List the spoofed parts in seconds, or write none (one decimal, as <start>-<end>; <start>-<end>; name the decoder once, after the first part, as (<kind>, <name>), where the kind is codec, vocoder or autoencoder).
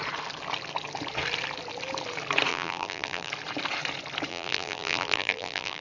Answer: 2.5-3.3 (vocoder, BigVGAN v2); 4.3-5.8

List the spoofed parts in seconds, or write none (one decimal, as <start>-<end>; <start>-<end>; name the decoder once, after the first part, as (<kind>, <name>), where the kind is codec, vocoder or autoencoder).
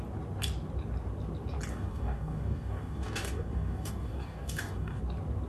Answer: 1.7-5.0 (codec, DAC)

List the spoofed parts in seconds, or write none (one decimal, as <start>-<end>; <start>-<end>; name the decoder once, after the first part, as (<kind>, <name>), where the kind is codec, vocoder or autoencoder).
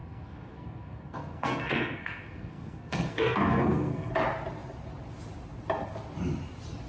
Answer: 0.0-4.1 (codec, SNAC)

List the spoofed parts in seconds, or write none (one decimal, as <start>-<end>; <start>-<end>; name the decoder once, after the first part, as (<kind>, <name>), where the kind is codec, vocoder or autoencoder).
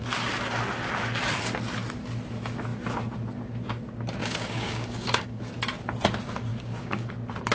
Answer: 4.2-5.4 (codec, DAC); 6.5-7.1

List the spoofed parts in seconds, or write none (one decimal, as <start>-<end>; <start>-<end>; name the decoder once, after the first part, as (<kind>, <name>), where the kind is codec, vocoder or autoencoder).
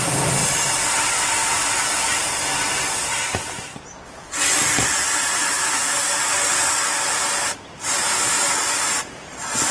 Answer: 5.4-6.0 (autoencoder, DAC-VAE)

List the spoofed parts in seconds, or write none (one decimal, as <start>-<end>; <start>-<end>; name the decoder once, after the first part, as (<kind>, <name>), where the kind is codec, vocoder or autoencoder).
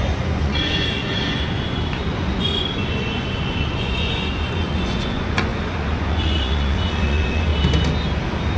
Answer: 0.0-7.5 (vocoder, Vocos)